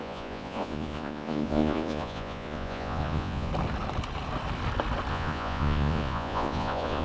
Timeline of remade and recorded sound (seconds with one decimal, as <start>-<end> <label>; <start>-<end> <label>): 0.0-3.5 remade; 3.5-5.1 recorded; 5.1-7.0 remade